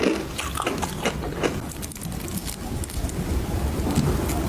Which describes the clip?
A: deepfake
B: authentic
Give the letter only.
B